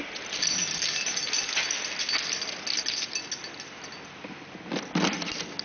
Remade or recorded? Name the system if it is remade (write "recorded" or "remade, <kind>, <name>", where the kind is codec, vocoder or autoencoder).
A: recorded